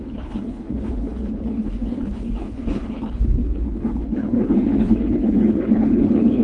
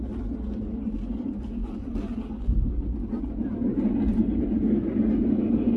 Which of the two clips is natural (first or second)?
second